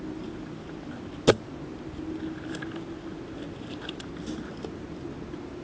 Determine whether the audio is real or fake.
real